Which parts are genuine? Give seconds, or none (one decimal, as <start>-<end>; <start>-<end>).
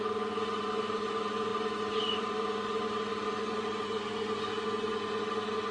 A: 0.0-5.7